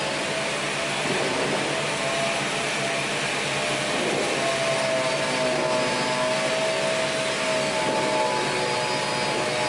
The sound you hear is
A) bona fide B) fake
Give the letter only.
A